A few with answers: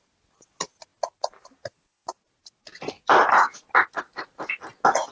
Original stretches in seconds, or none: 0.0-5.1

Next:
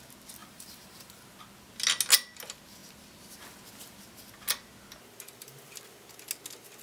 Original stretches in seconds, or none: 0.0-0.4; 1.2-6.8

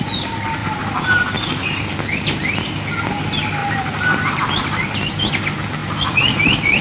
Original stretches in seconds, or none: 0.0-0.6; 1.9-3.6; 5.3-5.8

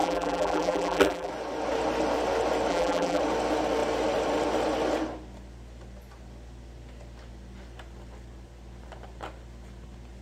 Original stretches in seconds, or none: 1.3-2.7; 3.2-10.2

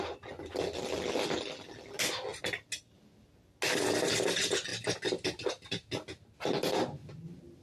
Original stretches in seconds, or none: 0.0-7.6

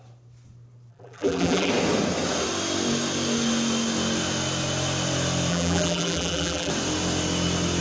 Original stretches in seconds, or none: 0.0-0.9; 1.7-5.5; 6.7-7.8